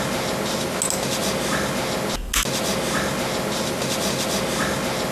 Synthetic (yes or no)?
no